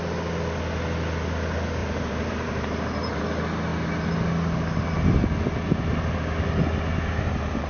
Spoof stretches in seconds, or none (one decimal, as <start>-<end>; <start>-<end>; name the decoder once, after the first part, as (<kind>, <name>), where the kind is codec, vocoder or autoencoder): 1.8-3.2 (vocoder, BigVGAN v2)